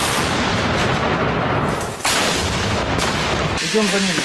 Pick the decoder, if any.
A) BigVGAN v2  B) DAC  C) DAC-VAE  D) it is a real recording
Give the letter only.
D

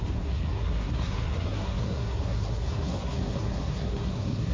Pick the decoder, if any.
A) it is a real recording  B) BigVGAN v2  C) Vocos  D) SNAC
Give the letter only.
D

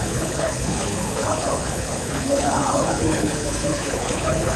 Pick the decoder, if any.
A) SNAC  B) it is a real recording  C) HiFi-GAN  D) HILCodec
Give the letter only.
D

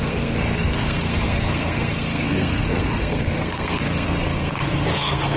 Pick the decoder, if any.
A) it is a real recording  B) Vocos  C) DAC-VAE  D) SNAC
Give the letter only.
D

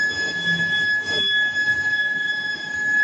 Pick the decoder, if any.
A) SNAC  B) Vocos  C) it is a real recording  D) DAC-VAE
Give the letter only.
D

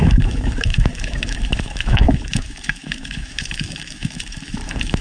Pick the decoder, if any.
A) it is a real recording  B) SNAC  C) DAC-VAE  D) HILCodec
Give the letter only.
C